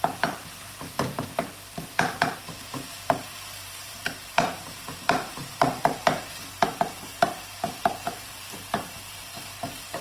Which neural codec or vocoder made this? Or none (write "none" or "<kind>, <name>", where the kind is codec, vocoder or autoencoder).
vocoder, BigVGAN v2